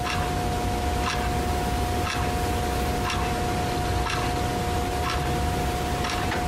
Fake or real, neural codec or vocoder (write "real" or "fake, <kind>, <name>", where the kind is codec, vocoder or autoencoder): real